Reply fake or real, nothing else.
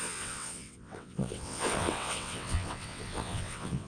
fake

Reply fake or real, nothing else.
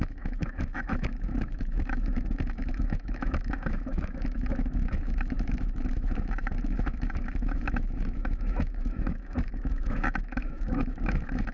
fake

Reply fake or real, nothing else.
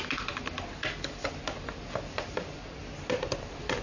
real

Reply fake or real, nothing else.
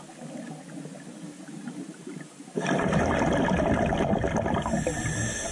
real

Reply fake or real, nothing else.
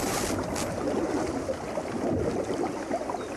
real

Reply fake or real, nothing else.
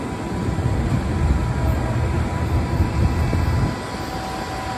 real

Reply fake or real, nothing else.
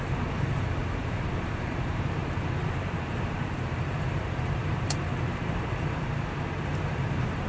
fake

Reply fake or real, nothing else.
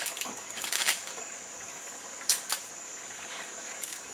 fake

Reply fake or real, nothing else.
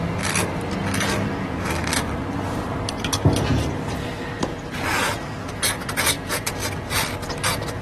real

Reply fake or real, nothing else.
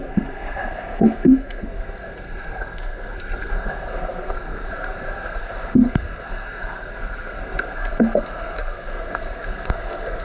fake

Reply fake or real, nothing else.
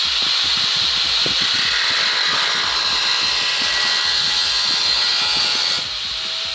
real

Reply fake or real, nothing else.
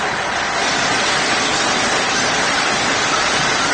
real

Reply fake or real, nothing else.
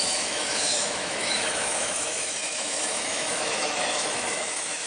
fake